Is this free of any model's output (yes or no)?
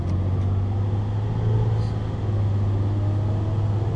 yes